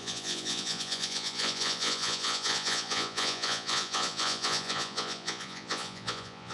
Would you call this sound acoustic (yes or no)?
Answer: no